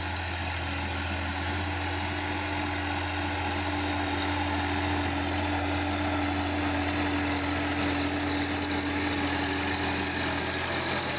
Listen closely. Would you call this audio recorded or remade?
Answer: recorded